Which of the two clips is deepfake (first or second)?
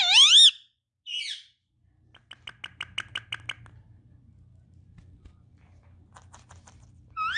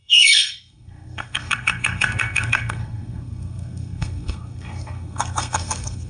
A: second